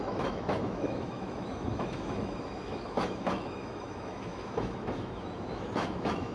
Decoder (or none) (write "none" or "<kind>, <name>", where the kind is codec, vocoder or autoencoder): autoencoder, DAC-VAE